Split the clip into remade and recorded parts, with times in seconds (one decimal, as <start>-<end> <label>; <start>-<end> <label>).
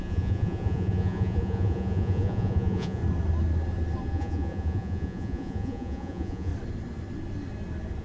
0.0-3.0 remade; 3.0-4.1 recorded; 4.1-6.5 remade; 6.5-8.0 recorded